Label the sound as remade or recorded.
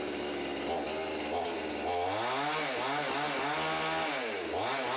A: recorded